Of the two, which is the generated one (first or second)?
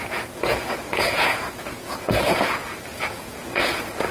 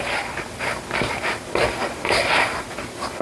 first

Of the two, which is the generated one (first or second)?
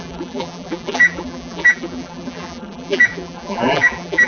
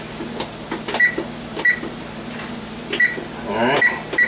first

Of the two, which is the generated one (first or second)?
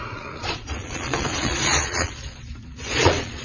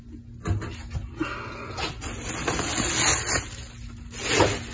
first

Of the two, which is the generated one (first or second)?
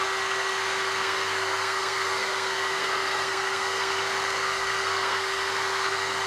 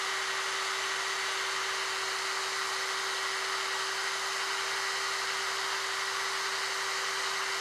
first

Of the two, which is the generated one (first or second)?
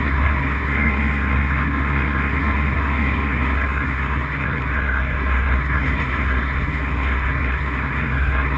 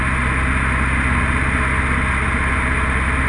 first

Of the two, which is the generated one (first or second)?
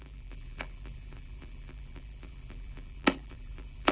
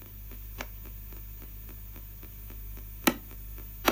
first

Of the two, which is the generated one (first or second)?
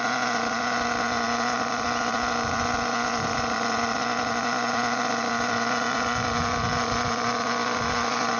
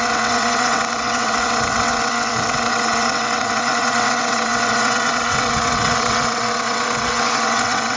second